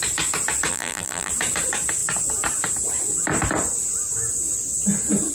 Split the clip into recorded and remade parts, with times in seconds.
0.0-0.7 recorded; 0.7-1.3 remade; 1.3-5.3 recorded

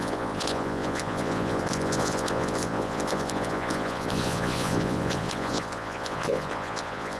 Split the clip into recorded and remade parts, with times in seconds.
0.0-7.2 remade

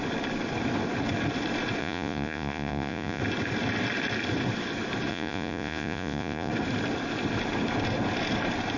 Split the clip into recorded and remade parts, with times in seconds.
0.0-1.8 recorded; 1.8-3.2 remade; 3.2-5.1 recorded; 5.1-6.5 remade; 6.5-8.8 recorded

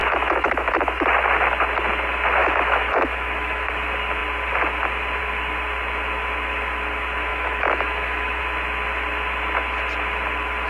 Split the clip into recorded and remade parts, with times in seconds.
0.0-0.7 remade; 0.7-2.4 recorded; 2.4-3.7 remade; 3.7-7.3 recorded; 7.3-8.4 remade; 8.4-10.7 recorded

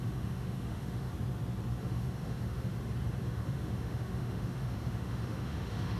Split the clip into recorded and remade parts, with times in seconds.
0.0-1.1 remade; 1.1-1.8 recorded; 1.8-2.7 remade; 2.7-3.2 recorded; 3.2-6.0 remade

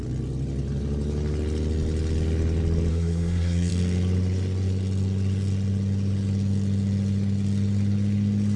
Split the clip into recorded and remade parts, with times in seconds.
0.0-2.9 recorded; 2.9-3.7 remade; 3.7-8.6 recorded

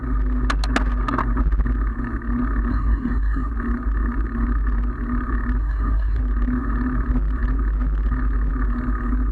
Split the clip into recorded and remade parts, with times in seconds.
0.0-2.7 recorded; 2.7-3.5 remade; 3.5-5.6 recorded; 5.6-6.2 remade; 6.2-9.3 recorded

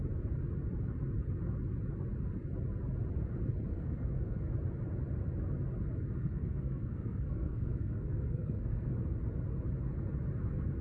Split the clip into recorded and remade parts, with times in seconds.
0.0-3.7 recorded; 3.7-4.5 remade; 4.5-6.2 recorded; 6.2-8.9 remade; 8.9-10.8 recorded